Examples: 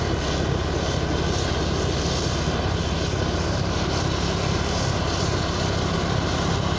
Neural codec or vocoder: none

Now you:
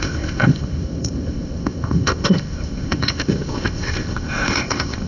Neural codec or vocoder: codec, ZipCodec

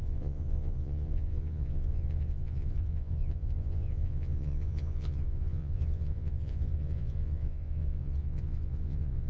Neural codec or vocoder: vocoder, Vocos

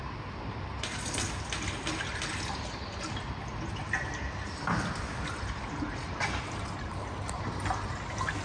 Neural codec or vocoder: none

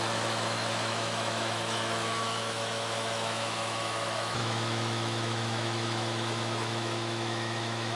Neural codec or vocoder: autoencoder, DAC-VAE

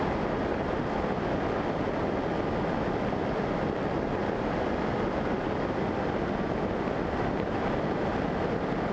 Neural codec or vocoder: none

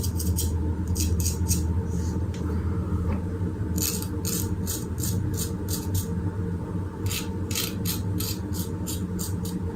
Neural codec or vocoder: none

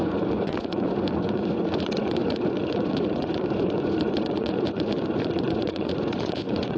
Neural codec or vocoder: vocoder, Vocos